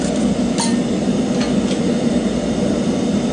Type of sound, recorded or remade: recorded